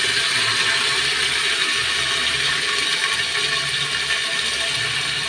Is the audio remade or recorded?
recorded